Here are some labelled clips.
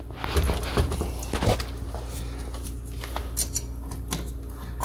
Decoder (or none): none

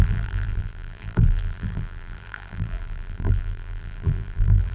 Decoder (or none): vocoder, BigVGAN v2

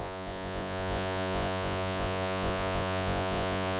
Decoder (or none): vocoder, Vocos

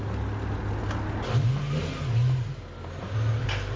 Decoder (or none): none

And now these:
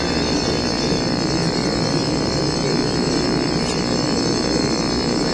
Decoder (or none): none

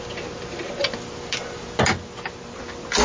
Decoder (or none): none